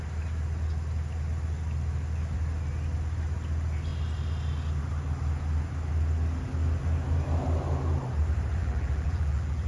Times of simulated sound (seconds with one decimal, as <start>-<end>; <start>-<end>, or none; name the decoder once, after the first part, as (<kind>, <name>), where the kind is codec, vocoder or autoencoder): 8.6-9.7 (vocoder, BigVGAN v2)